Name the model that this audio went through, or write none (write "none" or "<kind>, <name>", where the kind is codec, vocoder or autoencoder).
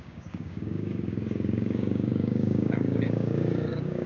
codec, DAC